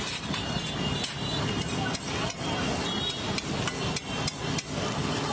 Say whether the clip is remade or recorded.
recorded